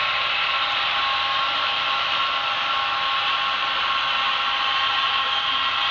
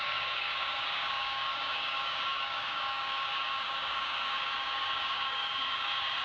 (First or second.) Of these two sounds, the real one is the first